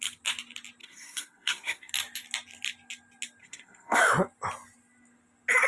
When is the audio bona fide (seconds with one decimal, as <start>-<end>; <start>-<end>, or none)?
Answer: 0.0-0.8; 1.9-3.4; 4.0-5.7